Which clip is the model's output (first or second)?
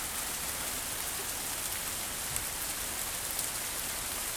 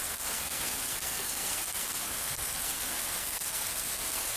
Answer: second